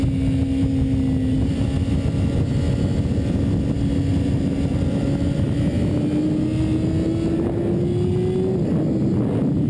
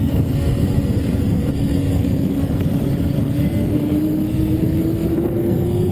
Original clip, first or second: first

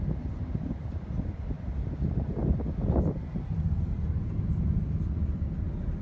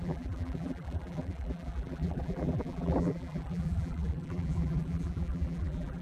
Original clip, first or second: first